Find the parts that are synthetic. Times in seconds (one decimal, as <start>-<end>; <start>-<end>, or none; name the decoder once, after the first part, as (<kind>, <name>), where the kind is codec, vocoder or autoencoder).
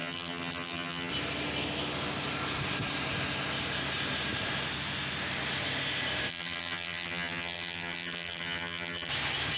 0.0-1.1 (vocoder, HiFi-GAN); 6.3-9.1